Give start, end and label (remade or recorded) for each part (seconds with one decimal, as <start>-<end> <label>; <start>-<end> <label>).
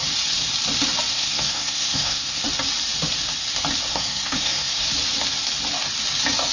0.0-1.1 recorded; 1.1-2.4 remade; 2.4-3.9 recorded; 3.9-4.9 remade; 4.9-6.5 recorded